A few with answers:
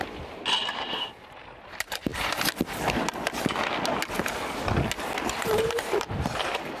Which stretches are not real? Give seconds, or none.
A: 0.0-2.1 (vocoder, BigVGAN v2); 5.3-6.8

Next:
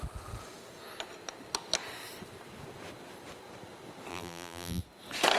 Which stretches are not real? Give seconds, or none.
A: 4.1-4.8 (vocoder, BigVGAN v2)

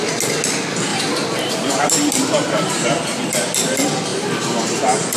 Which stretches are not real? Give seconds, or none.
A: 0.9-3.0 (vocoder, BigVGAN v2)

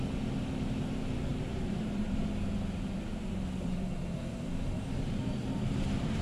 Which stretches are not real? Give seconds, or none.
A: 1.3-2.2 (vocoder, BigVGAN v2); 3.1-6.2

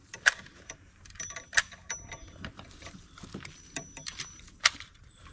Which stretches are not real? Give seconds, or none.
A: 0.0-5.3 (vocoder, BigVGAN v2)

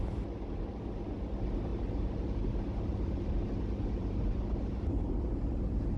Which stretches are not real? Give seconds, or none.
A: 1.7-5.3 (vocoder, BigVGAN v2)

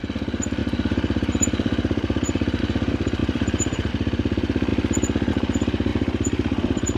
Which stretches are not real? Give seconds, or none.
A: 0.6-2.6 (vocoder, BigVGAN v2); 3.2-3.9; 5.9-7.0